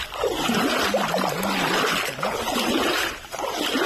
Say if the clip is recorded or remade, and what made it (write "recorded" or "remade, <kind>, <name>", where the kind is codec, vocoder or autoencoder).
recorded